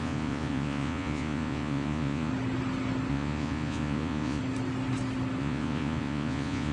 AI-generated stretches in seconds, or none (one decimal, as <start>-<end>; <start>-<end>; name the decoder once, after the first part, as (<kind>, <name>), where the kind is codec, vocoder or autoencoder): 0.0-2.3 (vocoder, Vocos); 3.1-4.4; 5.4-6.7